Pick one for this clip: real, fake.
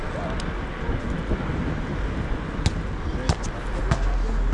real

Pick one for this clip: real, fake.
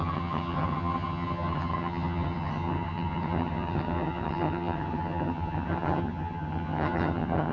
fake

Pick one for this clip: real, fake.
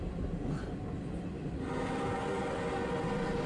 real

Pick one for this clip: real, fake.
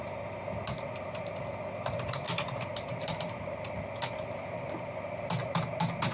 real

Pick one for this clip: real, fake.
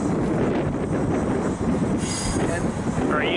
real